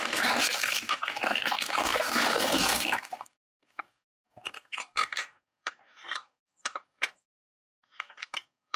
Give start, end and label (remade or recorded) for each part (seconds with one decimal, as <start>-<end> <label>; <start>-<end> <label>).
0.0-8.8 remade